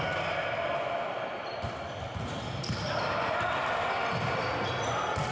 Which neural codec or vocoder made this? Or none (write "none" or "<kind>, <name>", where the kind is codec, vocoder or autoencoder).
none